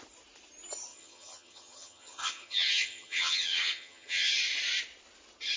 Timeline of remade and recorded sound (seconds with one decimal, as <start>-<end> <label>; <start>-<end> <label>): 0.0-0.9 recorded; 0.9-4.3 remade; 4.3-5.6 recorded